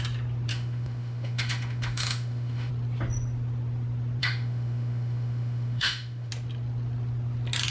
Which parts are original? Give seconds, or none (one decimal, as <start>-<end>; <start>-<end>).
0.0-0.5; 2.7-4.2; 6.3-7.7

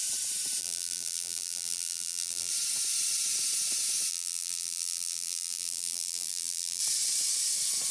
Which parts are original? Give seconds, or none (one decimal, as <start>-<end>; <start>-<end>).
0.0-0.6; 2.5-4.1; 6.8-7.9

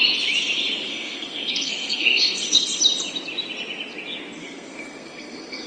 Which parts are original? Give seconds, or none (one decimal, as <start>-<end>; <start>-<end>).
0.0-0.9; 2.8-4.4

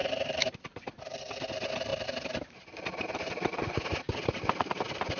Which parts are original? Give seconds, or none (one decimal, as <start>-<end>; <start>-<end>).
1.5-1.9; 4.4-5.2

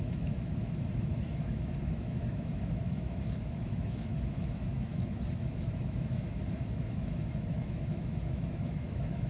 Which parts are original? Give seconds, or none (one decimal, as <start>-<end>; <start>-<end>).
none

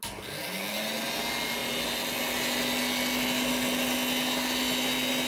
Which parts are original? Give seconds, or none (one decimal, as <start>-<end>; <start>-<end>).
0.0-5.3